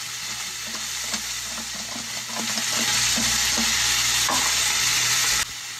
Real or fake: real